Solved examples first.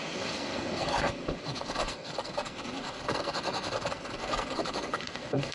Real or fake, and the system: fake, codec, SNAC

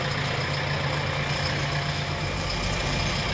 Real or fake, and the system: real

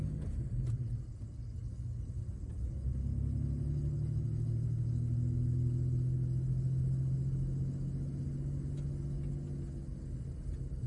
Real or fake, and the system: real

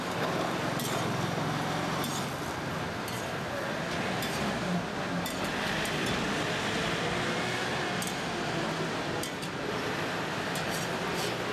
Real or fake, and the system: real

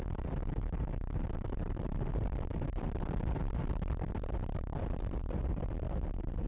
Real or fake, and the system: fake, vocoder, BigVGAN v2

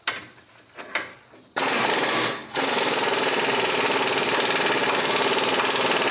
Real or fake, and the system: real